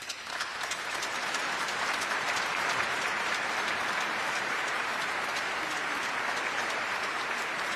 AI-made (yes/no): yes